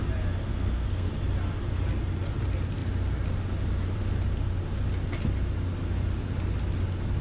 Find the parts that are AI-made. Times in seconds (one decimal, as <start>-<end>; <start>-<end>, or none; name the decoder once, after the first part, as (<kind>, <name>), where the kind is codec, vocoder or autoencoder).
0.5-1.1 (codec, SNAC)